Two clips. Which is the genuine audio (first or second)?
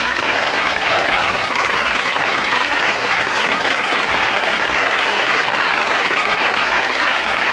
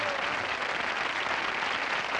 second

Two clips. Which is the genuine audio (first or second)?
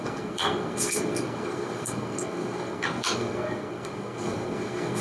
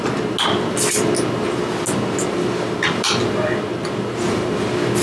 second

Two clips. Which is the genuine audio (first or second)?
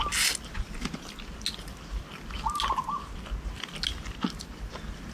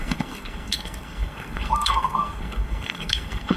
first